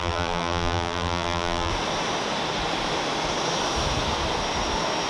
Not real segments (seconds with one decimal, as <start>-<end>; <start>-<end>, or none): 0.0-1.7